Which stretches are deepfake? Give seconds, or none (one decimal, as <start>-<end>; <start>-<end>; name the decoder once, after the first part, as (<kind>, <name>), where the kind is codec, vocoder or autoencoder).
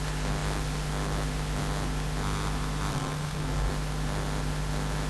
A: 2.9-3.7 (codec, SNAC)